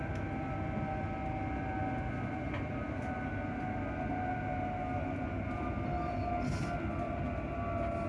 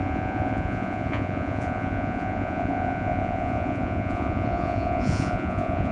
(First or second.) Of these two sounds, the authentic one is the first